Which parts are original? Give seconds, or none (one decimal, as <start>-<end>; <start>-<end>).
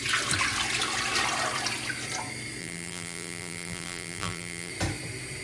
0.0-2.6; 4.7-5.4